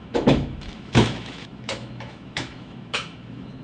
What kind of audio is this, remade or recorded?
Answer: remade